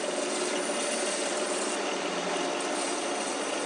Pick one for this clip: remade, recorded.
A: recorded